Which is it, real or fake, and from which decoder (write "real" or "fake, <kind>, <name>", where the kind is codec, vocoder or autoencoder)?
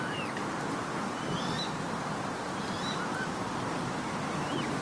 real